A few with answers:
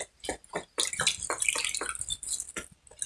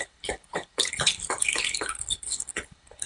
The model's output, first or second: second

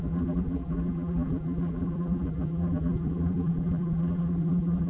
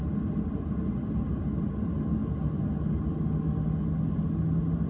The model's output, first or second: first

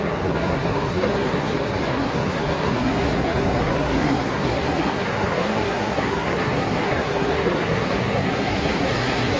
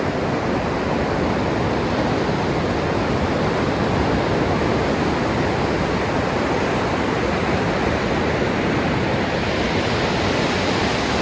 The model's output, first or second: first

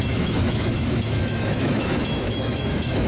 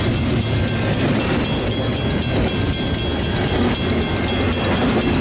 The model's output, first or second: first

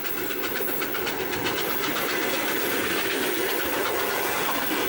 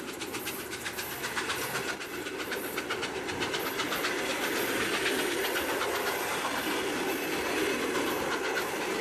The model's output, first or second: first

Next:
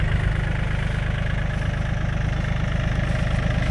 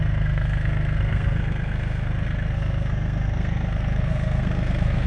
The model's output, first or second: second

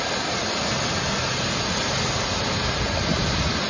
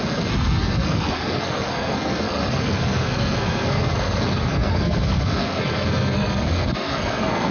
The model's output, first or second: second